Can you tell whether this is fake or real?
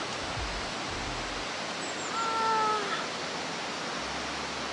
real